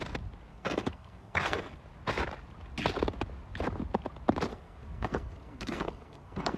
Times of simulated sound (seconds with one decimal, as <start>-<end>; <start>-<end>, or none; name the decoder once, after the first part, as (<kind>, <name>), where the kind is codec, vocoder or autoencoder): 0.5-1.8 (codec, SNAC); 4.5-6.6